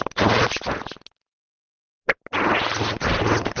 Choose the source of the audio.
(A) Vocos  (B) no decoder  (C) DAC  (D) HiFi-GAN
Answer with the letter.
B